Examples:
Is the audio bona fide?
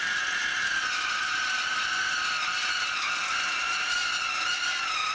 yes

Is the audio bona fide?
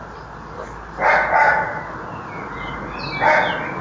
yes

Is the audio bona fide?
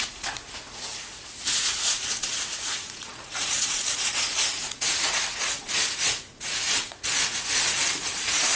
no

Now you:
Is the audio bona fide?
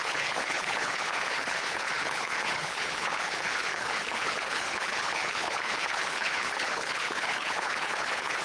no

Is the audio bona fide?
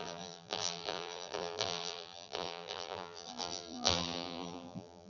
no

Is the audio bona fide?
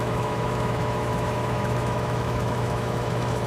no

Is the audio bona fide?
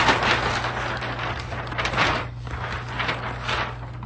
yes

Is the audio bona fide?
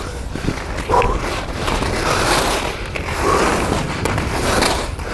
yes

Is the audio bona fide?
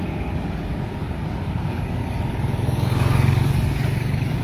no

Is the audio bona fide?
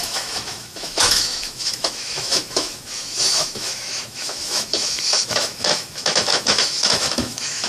no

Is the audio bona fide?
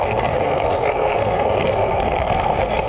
no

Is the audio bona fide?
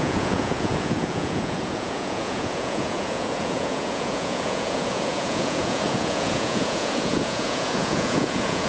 no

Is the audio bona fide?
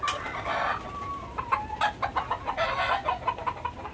yes